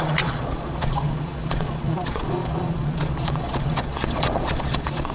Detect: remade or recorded remade